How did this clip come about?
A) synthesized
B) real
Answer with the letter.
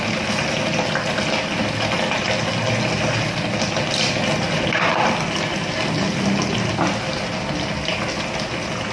B